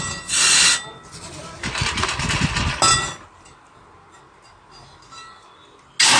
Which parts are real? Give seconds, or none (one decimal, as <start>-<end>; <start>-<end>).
0.0-6.2